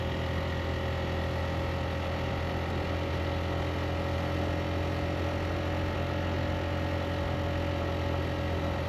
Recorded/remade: recorded